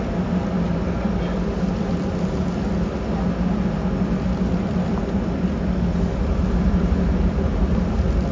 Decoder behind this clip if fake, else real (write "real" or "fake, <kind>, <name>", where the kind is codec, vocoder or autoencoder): real